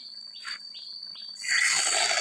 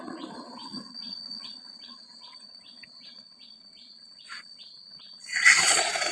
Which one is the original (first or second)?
first